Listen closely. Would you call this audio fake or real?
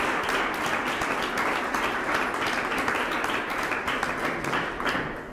real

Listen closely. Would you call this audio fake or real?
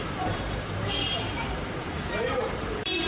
fake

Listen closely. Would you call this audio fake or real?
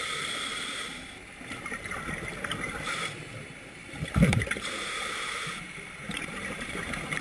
fake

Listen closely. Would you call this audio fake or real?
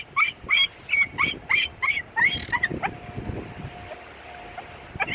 real